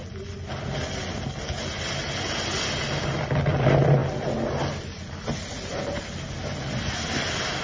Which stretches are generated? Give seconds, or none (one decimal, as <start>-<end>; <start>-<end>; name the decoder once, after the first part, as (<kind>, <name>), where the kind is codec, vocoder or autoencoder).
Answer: none